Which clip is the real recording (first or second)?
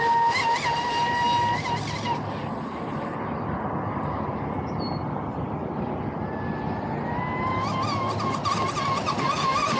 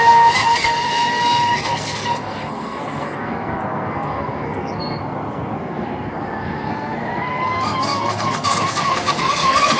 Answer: first